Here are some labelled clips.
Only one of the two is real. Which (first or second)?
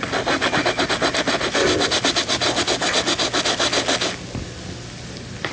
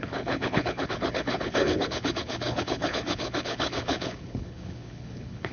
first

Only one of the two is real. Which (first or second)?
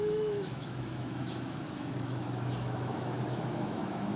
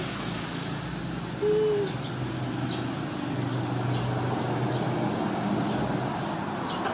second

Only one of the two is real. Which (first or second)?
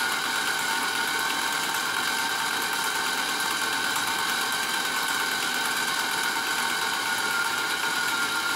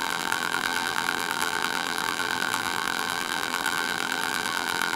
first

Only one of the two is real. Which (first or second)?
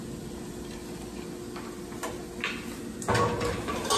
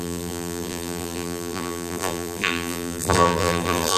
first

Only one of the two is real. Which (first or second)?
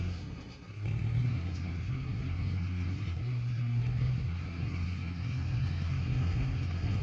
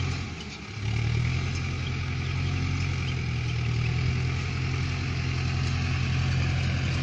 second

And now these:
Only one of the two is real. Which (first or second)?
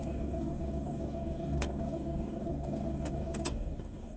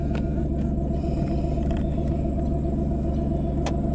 second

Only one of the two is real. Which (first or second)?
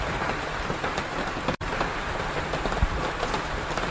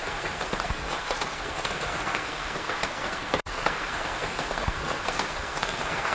first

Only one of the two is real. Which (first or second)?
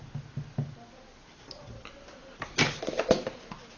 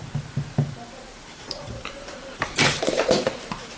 first